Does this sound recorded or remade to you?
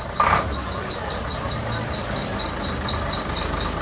recorded